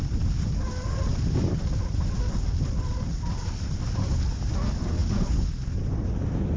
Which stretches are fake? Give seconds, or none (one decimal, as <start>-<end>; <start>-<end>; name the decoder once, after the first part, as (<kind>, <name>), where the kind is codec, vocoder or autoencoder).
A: none